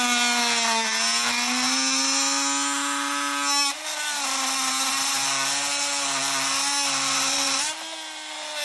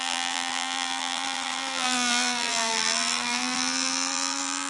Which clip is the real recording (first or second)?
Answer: first